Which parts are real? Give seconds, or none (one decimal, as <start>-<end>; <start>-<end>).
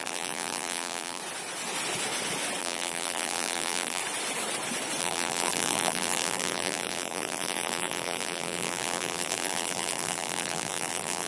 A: 1.2-2.6; 4.0-5.0